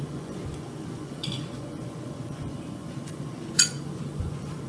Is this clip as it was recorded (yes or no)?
no